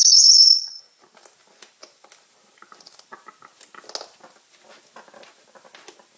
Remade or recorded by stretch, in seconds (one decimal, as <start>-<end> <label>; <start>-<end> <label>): 0.0-0.8 remade; 0.8-6.2 recorded